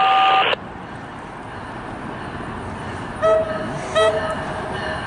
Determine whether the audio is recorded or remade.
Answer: recorded